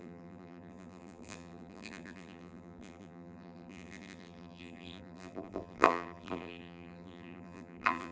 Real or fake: fake